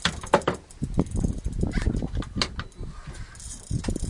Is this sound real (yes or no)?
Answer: yes